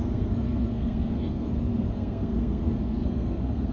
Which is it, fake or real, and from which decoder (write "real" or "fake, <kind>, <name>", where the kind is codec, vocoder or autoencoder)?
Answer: fake, codec, SNAC